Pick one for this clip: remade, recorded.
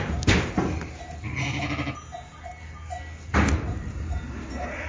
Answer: recorded